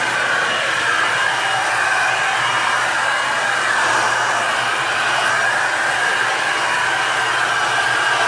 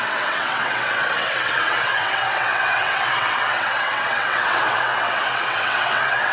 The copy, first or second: second